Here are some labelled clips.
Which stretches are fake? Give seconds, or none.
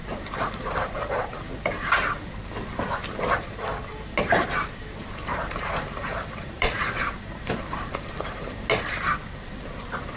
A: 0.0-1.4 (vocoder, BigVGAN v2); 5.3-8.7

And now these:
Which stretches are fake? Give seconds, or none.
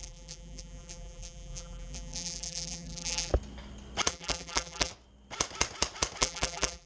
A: 0.0-3.3 (vocoder, BigVGAN v2); 4.1-4.9; 6.2-6.9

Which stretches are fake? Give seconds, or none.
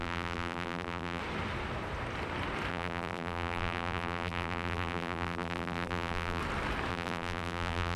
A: 0.0-1.2 (vocoder, BigVGAN v2); 2.7-6.4; 6.9-8.0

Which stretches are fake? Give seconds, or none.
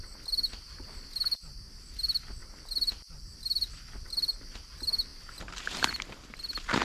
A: 2.4-3.7 (vocoder, BigVGAN v2)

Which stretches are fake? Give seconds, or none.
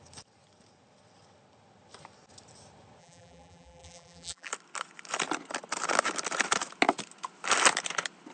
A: 3.0-4.5 (vocoder, BigVGAN v2)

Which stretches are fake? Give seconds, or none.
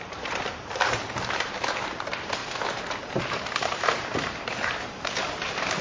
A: 0.0-2.4 (vocoder, BigVGAN v2); 3.2-5.8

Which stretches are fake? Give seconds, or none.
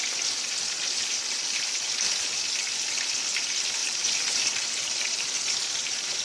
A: 3.8-5.5 (vocoder, BigVGAN v2)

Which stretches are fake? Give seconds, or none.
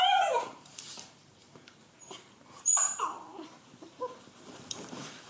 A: 0.0-5.3 (vocoder, BigVGAN v2)